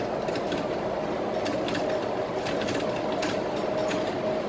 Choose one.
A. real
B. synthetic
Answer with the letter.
A